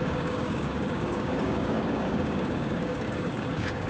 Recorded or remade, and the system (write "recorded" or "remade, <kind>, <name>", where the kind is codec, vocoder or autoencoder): remade, codec, DAC